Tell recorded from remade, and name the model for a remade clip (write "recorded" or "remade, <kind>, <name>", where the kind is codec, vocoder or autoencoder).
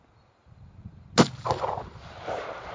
recorded